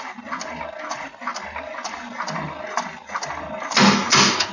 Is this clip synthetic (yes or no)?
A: no